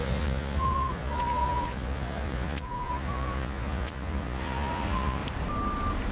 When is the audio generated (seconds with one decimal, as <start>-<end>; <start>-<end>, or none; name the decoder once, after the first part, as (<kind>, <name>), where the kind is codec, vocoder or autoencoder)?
0.0-5.2 (vocoder, Vocos)